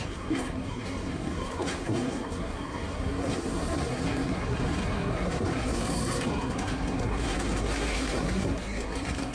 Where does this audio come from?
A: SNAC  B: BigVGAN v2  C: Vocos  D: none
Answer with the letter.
A